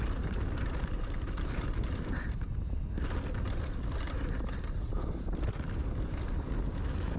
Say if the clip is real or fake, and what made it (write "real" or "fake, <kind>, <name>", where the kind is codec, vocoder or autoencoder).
real